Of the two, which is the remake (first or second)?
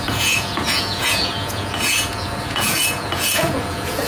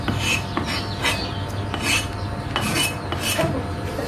first